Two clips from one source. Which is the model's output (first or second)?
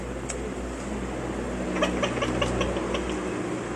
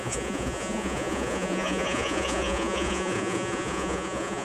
second